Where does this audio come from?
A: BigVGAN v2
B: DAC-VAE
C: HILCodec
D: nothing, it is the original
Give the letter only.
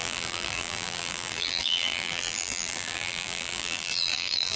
A